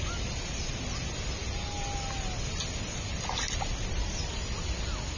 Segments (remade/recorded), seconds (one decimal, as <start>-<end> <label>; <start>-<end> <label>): 0.0-5.2 recorded